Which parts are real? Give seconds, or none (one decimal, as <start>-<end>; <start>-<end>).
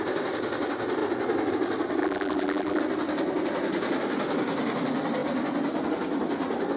0.0-2.0; 2.8-6.8